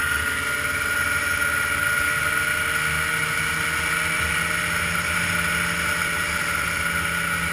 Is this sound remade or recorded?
recorded